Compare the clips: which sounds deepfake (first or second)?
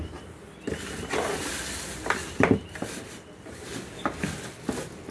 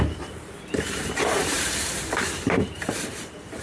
second